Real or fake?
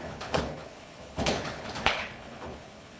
fake